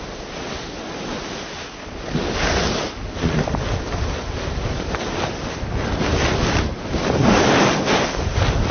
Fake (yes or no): no